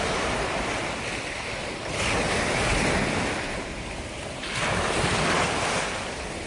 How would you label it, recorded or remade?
recorded